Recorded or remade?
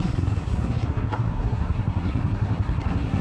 remade